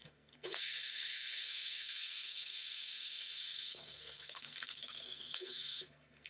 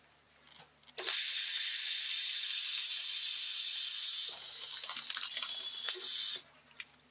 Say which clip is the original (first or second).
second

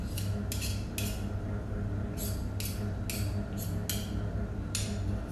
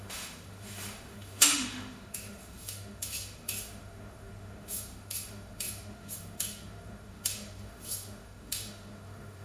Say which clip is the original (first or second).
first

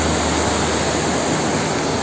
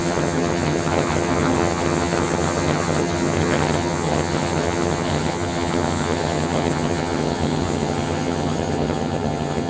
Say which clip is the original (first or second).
first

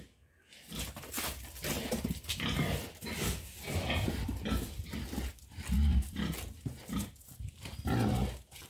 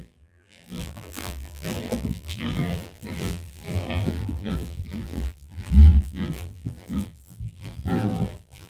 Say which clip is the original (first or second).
first